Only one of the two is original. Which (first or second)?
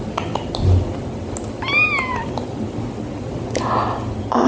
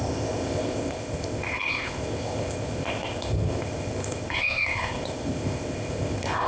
first